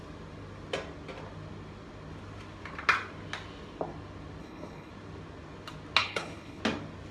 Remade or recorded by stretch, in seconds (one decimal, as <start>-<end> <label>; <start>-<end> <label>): 0.0-4.4 recorded; 4.4-4.9 remade; 4.9-6.0 recorded; 6.0-6.6 remade; 6.6-7.1 recorded